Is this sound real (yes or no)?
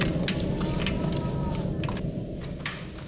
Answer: yes